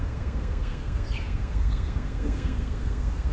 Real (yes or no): no